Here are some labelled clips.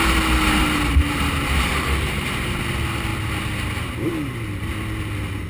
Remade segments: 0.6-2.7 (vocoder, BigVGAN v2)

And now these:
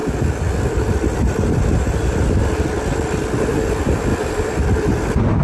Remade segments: none

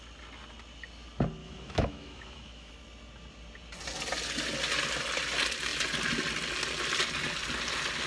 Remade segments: 1.4-2.7 (autoencoder, DAC-VAE)